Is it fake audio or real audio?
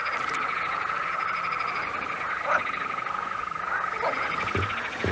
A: real